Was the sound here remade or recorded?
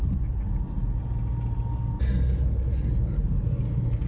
recorded